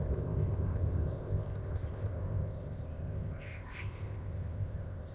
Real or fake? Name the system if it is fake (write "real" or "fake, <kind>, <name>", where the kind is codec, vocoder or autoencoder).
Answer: fake, codec, ZipCodec